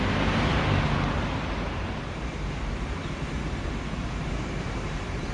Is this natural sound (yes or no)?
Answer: no